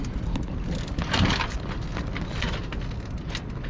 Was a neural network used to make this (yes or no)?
no